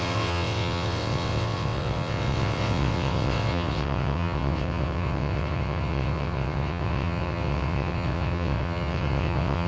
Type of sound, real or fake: fake